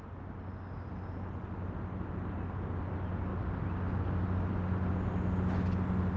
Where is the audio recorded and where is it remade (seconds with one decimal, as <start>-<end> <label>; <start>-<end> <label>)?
0.0-6.2 recorded

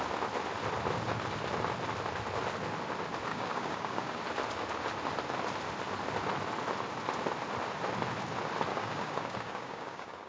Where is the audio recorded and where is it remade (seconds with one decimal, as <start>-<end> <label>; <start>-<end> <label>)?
0.0-3.3 recorded; 3.3-4.2 remade; 4.2-8.7 recorded; 8.7-10.3 remade

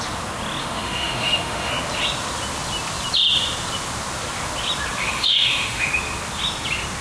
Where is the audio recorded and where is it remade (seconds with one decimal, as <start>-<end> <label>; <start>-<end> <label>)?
0.0-0.6 recorded; 0.6-1.7 remade; 1.7-5.0 recorded; 5.0-5.9 remade; 5.9-7.0 recorded

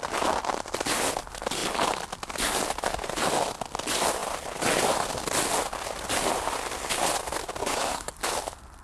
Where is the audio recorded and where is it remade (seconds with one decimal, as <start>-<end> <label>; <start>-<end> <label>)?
0.0-7.6 recorded; 7.6-8.1 remade; 8.1-8.8 recorded

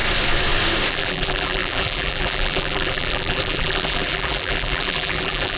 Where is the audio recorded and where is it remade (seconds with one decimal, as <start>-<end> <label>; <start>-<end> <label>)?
0.0-0.9 recorded; 0.9-5.6 remade

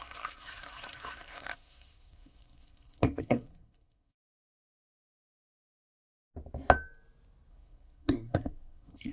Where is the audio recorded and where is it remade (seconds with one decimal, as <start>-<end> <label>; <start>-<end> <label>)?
0.0-5.2 remade; 5.2-7.5 recorded; 7.5-9.1 remade